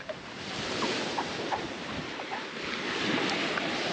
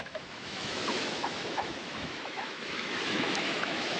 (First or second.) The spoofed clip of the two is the second